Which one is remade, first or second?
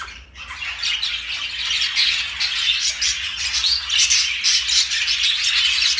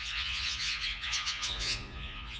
second